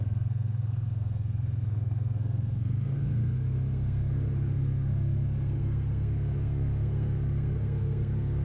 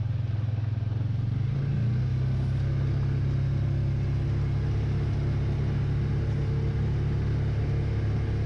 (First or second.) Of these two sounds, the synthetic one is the first